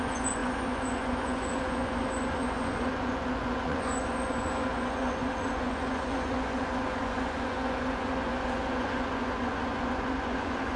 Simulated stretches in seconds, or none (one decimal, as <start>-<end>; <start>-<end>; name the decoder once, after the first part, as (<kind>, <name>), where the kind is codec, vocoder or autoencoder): 0.0-10.8 (vocoder, Vocos)